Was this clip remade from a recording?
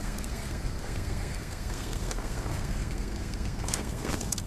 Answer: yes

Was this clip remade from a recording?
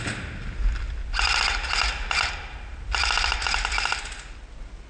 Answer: no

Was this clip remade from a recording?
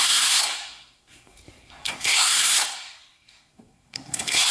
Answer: yes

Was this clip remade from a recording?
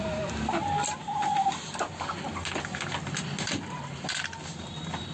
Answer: no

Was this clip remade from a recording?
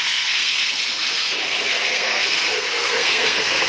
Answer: yes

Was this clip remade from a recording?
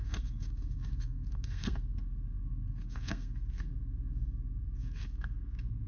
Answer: yes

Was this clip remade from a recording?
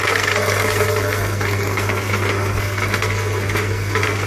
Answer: yes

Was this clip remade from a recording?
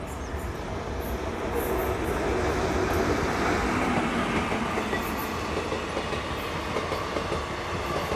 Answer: no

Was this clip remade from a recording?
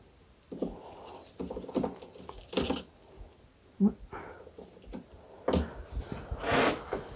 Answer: no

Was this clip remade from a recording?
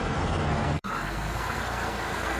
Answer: yes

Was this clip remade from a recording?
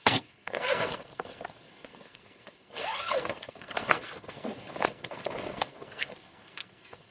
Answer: yes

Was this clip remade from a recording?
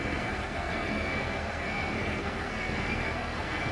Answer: yes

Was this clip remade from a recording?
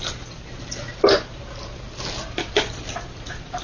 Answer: no